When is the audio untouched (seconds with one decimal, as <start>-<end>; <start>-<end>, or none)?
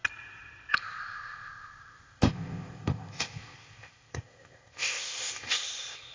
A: 0.0-0.7